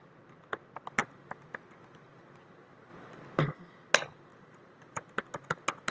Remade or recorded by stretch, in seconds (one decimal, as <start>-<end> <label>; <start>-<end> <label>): 0.0-4.3 recorded; 4.3-5.2 remade; 5.2-5.9 recorded